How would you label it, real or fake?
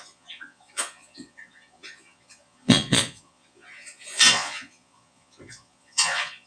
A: fake